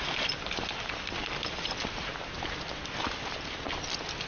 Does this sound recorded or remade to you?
recorded